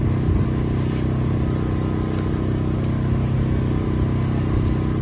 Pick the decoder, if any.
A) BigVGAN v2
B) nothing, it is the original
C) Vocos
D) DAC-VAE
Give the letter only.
B